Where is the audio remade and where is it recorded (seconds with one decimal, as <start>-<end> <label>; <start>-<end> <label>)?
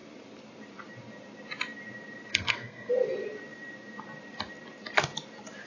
0.0-2.3 recorded; 2.3-2.9 remade; 2.9-5.7 recorded